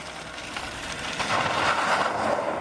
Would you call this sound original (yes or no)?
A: yes